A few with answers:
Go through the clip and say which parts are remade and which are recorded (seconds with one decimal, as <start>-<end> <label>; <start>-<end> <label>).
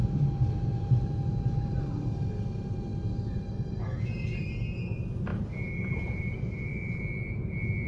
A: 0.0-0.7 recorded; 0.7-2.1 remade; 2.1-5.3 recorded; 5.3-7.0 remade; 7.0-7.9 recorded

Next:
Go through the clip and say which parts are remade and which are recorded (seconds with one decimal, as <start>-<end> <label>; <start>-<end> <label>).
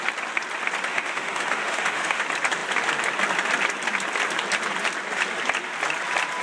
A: 0.0-0.9 recorded; 0.9-2.2 remade; 2.2-6.4 recorded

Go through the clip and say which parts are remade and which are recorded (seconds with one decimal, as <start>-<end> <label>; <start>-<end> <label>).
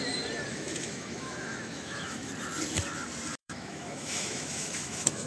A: 0.0-0.5 recorded; 0.5-2.3 remade; 2.3-3.4 recorded; 3.4-5.3 remade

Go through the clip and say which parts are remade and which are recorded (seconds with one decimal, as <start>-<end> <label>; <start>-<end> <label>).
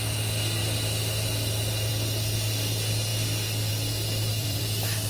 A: 0.0-4.3 recorded; 4.3-5.1 remade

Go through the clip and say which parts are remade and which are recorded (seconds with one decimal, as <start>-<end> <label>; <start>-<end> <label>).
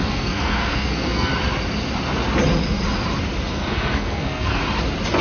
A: 0.0-1.3 remade; 1.3-3.5 recorded; 3.5-4.6 remade; 4.6-5.2 recorded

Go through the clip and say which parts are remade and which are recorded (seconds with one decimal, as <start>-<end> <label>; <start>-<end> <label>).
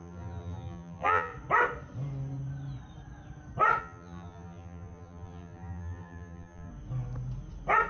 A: 0.0-1.3 remade; 1.3-3.8 recorded; 3.8-6.7 remade; 6.7-7.9 recorded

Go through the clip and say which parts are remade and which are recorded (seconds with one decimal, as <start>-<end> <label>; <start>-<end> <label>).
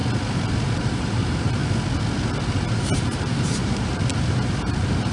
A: 0.0-0.8 recorded; 0.8-1.6 remade; 1.6-2.7 recorded; 2.7-5.1 remade